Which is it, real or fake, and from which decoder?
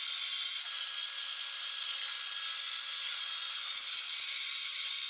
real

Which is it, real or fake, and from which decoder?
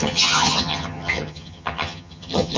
fake, vocoder, HiFi-GAN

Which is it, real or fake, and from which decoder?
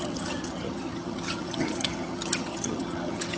fake, vocoder, HiFi-GAN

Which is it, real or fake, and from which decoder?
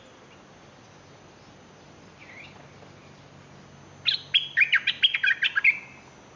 real